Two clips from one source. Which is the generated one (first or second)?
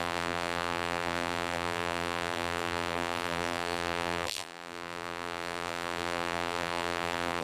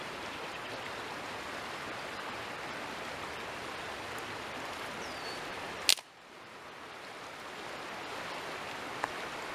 first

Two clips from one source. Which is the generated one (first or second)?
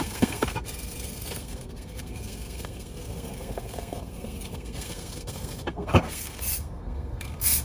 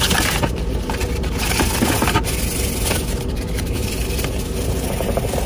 first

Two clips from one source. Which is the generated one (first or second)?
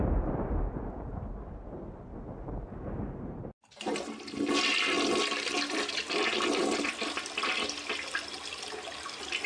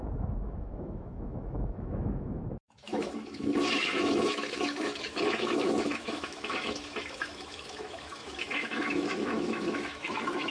second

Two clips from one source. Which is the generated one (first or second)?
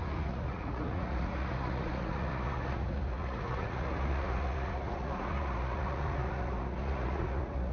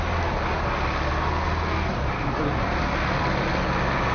first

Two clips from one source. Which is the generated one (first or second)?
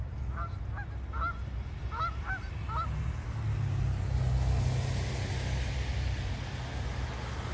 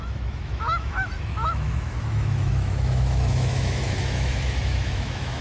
second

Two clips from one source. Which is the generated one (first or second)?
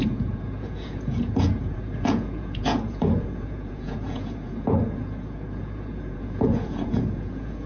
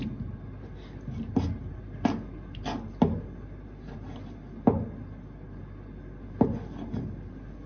first